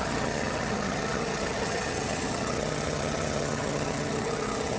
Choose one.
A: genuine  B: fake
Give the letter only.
B